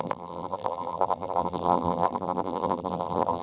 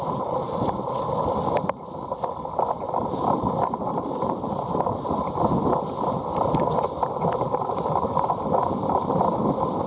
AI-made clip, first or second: first